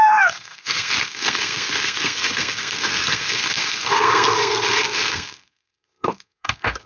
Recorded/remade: remade